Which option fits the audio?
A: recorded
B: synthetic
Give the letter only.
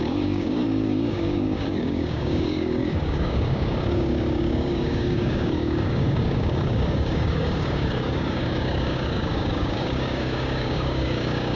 B